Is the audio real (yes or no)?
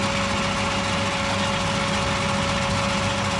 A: yes